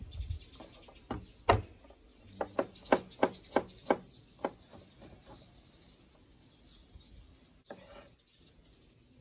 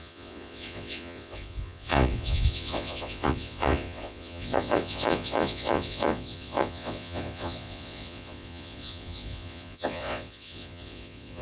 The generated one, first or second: second